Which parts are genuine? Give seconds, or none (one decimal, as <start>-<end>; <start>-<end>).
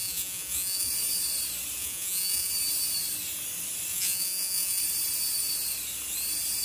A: 0.9-1.8; 2.5-3.9; 4.8-6.6